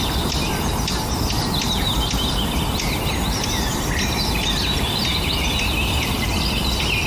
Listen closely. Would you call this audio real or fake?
real